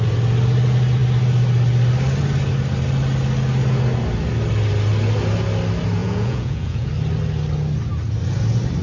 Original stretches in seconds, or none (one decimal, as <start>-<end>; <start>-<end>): 0.0-6.0; 6.9-8.8